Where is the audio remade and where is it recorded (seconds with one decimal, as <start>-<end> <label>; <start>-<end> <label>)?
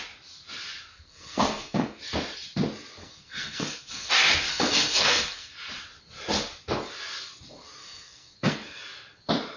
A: 0.0-0.9 recorded; 0.9-2.0 remade; 2.0-3.0 recorded; 3.0-4.1 remade; 4.1-4.5 recorded; 4.5-5.5 remade; 5.5-7.8 recorded; 7.8-8.8 remade; 8.8-9.6 recorded